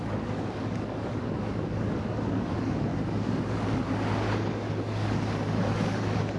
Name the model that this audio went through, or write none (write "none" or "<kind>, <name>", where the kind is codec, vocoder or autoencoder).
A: codec, DAC